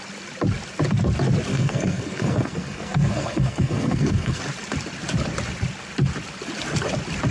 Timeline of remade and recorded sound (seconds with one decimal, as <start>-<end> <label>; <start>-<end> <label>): 0.0-1.5 recorded; 1.5-4.4 remade; 4.4-7.3 recorded